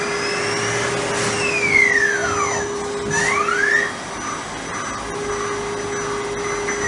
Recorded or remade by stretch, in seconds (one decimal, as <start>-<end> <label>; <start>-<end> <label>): 0.0-6.9 recorded